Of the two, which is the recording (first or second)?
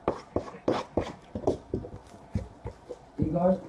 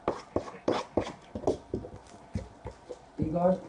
second